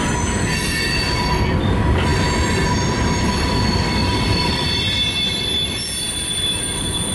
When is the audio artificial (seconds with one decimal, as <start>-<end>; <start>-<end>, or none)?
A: 4.0-4.7